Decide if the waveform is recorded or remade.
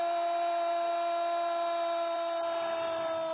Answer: recorded